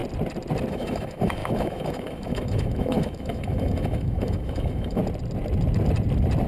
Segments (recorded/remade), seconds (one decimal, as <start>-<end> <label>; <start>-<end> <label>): 0.0-0.7 recorded; 0.7-5.0 remade; 5.0-6.5 recorded